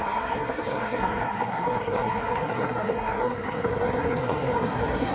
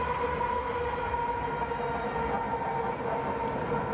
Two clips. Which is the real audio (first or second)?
second